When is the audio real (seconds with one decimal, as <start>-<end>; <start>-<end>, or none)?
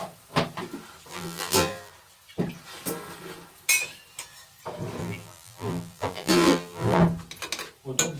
0.0-1.1; 1.9-5.0; 7.0-8.2